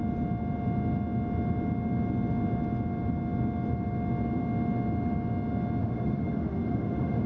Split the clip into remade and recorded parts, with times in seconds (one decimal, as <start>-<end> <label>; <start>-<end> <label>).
0.0-5.8 recorded; 5.8-7.3 remade